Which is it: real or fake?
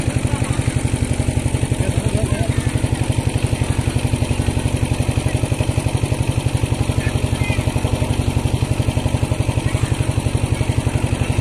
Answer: real